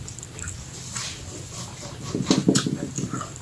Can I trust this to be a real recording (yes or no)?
no